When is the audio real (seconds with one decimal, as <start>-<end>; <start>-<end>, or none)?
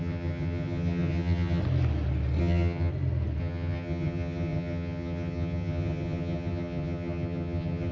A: 1.6-2.4; 2.9-3.4